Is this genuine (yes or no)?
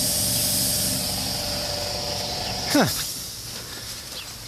yes